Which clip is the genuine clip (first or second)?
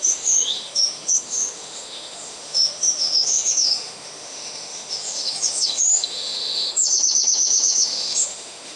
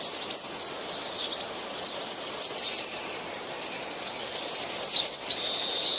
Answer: second